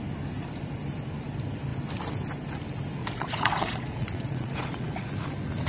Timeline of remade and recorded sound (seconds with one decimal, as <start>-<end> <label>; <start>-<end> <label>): 0.0-3.0 recorded; 3.0-5.1 remade; 5.1-5.7 recorded